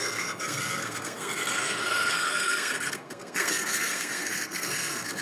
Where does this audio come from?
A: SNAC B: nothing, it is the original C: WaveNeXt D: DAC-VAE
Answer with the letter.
A